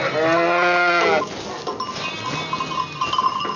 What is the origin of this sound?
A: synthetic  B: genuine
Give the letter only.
B